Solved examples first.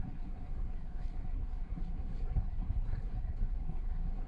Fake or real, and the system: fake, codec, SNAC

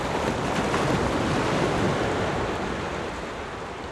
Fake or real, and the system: real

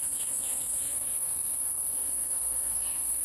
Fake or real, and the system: fake, codec, SNAC